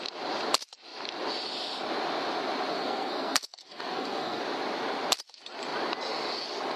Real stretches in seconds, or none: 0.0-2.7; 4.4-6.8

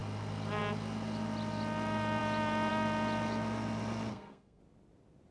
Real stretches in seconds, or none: 0.0-4.1; 4.6-5.3